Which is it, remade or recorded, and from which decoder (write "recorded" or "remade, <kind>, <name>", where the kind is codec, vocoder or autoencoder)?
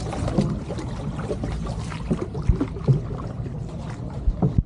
recorded